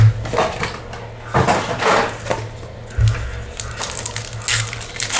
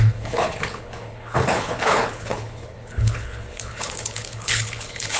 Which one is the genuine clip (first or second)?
first